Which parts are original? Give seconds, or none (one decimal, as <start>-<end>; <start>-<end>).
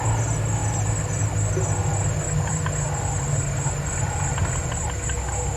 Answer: 0.0-0.6; 1.2-1.8; 4.6-5.6